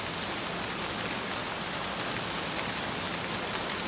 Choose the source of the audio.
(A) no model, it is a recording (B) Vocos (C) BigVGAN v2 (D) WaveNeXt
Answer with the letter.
A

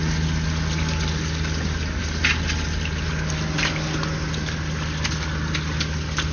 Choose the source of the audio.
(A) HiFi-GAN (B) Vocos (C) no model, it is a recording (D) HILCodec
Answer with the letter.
C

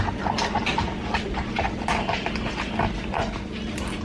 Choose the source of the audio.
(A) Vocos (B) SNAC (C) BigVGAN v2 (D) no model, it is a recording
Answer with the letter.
D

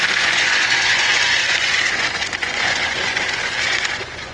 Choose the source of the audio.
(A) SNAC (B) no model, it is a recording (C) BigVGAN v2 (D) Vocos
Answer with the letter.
D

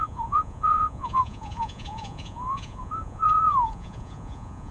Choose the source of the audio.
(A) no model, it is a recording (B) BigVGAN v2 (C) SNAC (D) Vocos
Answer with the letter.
D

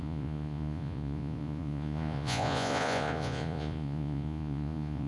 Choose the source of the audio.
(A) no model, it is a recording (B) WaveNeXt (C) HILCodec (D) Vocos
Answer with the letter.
D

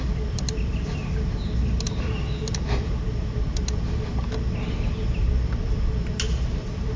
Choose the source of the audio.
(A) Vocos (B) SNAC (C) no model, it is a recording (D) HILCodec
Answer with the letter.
C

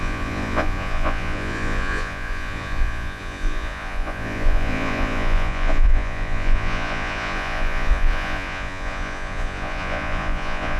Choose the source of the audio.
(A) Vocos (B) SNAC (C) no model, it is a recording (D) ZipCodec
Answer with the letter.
A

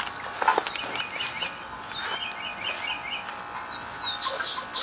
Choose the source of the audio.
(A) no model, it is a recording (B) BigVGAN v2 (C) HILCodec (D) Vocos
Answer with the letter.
A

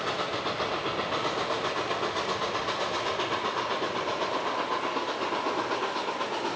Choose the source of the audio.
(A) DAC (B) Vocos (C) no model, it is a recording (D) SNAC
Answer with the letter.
C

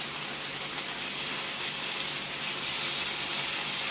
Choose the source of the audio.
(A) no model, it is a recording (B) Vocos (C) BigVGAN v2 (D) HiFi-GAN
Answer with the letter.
A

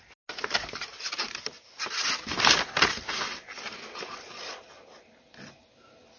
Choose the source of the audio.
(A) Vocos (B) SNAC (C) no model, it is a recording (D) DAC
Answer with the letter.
C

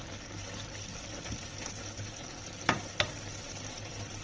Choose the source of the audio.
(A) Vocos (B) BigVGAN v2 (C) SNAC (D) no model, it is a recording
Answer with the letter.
D